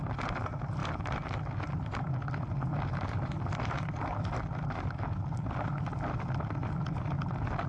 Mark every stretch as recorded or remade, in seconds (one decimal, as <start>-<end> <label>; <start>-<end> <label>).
0.0-7.7 recorded